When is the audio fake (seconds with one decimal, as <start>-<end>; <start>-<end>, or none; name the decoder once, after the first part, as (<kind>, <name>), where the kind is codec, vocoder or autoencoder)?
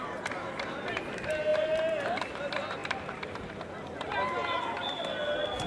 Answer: none